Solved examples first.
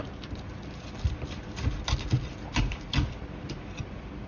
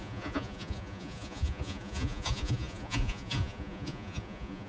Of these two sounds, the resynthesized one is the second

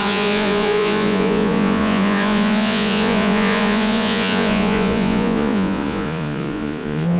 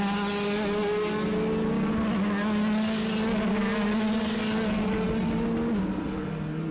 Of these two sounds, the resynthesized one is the first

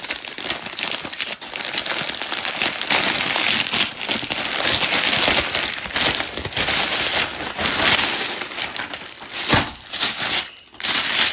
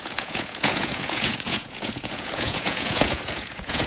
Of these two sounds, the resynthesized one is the second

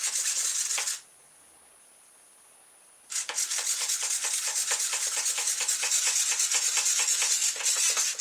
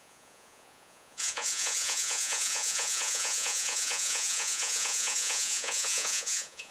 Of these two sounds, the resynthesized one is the second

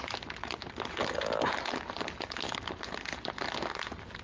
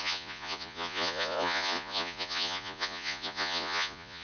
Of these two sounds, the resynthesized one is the second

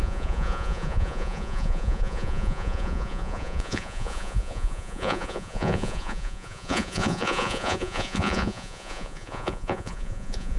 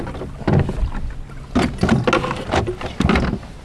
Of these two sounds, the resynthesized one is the first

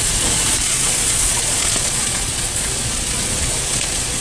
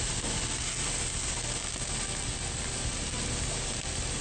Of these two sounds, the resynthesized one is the first